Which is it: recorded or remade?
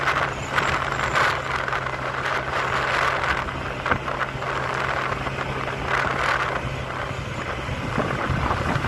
recorded